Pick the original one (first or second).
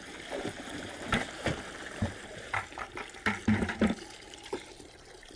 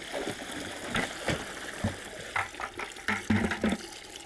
second